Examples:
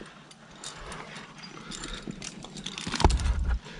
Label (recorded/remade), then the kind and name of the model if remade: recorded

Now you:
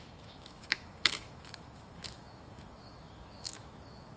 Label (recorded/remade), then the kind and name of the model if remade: remade, autoencoder, DAC-VAE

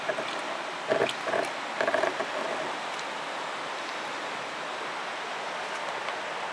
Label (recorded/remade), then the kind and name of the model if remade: recorded